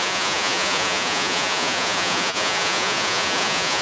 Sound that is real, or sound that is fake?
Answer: fake